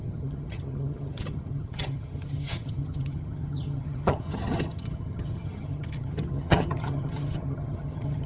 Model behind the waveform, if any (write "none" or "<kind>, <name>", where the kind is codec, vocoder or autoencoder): vocoder, HiFi-GAN